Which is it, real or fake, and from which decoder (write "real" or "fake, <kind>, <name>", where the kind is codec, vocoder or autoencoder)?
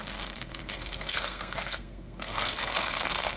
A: fake, codec, SNAC